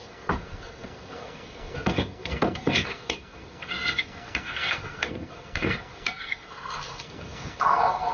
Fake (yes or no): yes